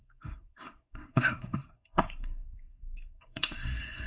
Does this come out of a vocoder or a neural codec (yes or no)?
yes